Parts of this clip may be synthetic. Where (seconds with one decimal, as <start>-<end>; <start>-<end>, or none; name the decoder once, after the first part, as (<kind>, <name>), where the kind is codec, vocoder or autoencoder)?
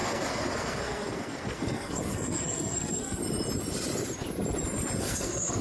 0.0-3.2 (codec, SNAC); 5.0-5.6